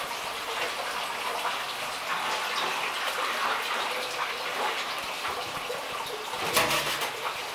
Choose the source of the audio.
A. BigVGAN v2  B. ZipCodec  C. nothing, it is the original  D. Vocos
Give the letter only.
C